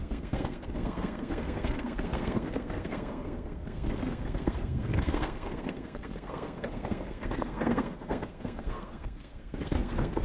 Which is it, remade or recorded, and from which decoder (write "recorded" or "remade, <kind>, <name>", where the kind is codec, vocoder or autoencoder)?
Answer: remade, codec, SNAC